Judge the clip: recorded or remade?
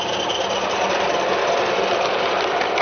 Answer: recorded